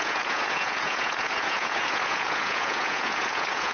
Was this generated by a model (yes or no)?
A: yes